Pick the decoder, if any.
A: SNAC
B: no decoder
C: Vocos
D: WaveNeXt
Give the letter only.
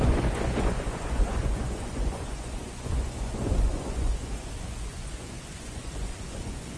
C